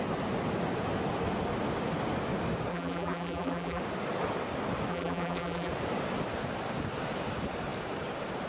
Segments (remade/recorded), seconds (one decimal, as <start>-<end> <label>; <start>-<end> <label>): 0.0-2.7 recorded; 2.7-3.8 remade; 3.8-4.9 recorded; 4.9-5.7 remade; 5.7-8.5 recorded